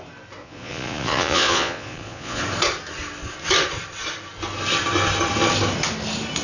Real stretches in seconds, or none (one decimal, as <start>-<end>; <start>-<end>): 0.0-0.4; 2.4-6.4